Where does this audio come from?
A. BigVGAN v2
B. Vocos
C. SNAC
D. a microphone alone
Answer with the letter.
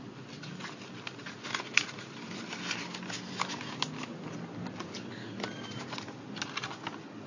D